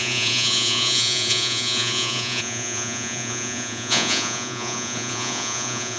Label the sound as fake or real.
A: fake